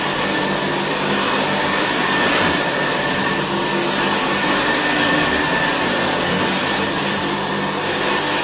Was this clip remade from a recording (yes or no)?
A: no